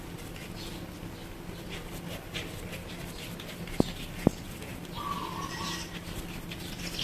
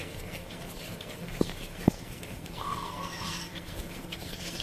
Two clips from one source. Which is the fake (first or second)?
second